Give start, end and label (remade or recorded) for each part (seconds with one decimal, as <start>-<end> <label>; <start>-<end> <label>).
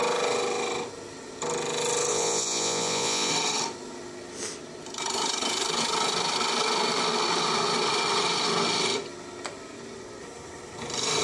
0.0-2.1 recorded; 2.1-3.3 remade; 3.3-11.2 recorded